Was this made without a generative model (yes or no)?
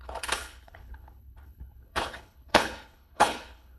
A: no